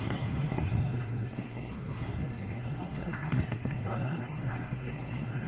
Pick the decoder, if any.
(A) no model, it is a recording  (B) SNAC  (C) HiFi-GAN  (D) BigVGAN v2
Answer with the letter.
B